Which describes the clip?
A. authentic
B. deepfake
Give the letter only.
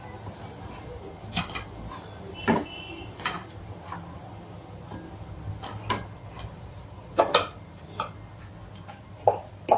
A